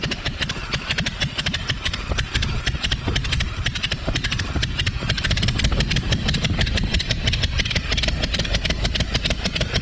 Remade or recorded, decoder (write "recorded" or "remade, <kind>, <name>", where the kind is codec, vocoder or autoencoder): remade, vocoder, BigVGAN v2